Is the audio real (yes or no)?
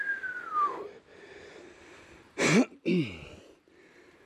yes